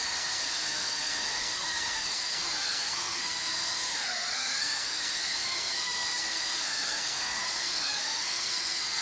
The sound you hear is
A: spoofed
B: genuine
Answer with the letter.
A